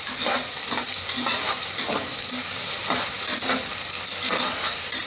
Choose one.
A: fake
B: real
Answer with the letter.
A